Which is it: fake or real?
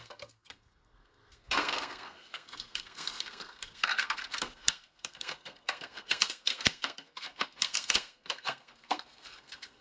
fake